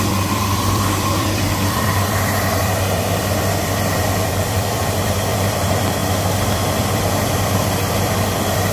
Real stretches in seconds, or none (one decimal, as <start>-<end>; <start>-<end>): none